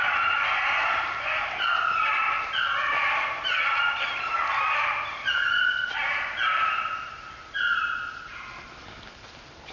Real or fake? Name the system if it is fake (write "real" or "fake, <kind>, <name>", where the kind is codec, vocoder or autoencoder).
real